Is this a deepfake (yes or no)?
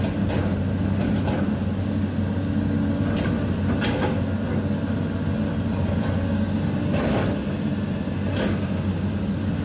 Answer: no